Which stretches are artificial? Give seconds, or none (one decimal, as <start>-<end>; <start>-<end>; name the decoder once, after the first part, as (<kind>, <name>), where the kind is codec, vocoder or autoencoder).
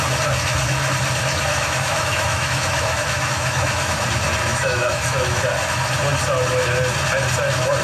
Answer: 1.5-4.0 (autoencoder, DAC-VAE); 4.5-5.4